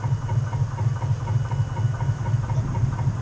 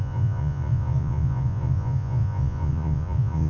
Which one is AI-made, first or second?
second